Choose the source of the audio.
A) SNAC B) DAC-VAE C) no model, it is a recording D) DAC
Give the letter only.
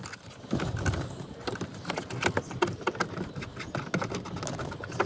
C